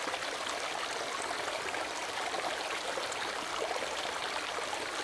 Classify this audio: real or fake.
real